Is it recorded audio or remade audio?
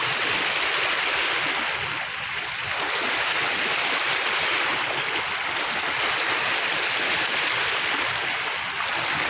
recorded